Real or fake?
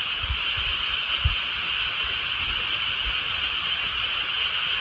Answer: real